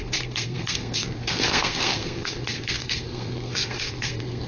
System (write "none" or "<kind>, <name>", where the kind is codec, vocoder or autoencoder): codec, SNAC